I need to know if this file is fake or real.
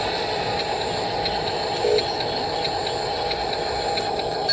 real